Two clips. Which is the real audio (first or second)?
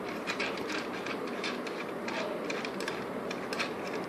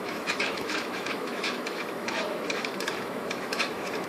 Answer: first